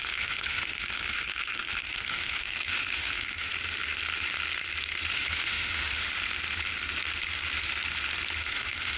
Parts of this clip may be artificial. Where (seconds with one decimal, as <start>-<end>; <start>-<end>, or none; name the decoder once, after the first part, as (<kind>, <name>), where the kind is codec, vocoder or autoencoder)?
0.0-3.5 (autoencoder, DAC-VAE); 5.1-6.0; 8.4-9.0